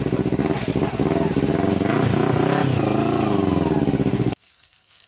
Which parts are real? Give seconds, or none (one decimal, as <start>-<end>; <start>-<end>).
0.0-4.1

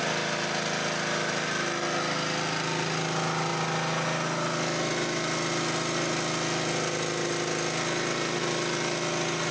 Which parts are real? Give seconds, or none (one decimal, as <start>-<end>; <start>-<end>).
0.0-9.5

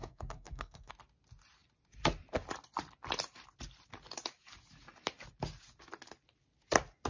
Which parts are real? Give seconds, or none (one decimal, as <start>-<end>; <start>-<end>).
0.9-7.1